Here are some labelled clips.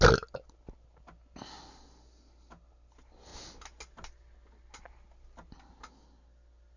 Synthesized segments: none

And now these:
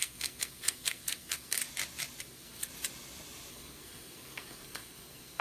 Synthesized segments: 0.0-1.6 (codec, SNAC); 2.2-2.7; 3.5-5.4

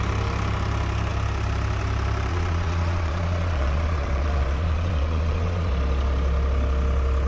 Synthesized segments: 2.3-5.7 (vocoder, Vocos)